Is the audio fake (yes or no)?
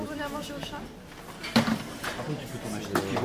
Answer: no